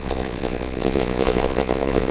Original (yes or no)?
no